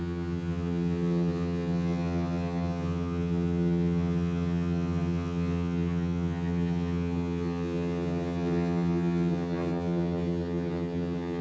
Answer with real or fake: fake